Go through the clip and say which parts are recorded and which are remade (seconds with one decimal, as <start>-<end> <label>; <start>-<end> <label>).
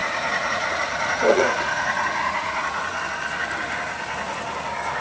0.0-3.0 remade; 3.0-5.0 recorded